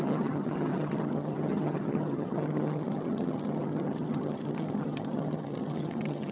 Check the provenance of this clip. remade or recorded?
remade